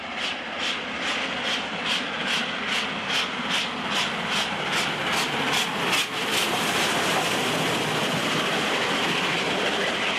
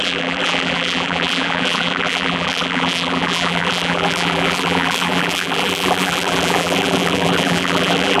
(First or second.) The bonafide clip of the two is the first